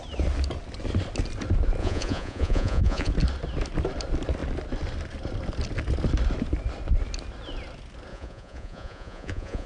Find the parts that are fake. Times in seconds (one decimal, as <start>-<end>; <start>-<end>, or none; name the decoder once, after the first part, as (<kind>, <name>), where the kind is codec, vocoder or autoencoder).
1.8-3.1 (vocoder, Vocos); 8.1-9.7